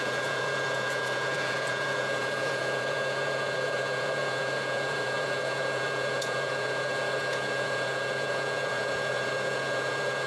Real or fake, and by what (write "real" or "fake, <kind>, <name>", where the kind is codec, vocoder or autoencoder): fake, vocoder, Vocos